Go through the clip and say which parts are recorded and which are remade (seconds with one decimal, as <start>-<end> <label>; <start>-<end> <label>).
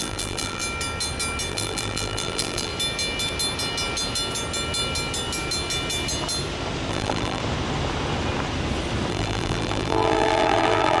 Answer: 0.0-0.6 remade; 0.6-1.5 recorded; 1.5-2.7 remade; 2.7-6.9 recorded; 6.9-7.4 remade; 7.4-9.1 recorded; 9.1-11.0 remade